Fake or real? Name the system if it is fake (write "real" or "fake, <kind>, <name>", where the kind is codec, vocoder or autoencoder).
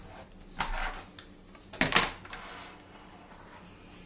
real